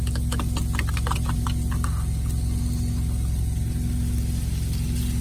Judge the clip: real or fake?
real